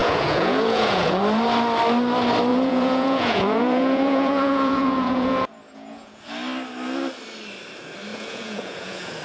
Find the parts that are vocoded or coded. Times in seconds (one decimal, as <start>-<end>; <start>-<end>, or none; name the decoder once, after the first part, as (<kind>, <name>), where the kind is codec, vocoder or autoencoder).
0.0-1.2 (vocoder, Vocos); 2.5-6.2; 8.1-9.2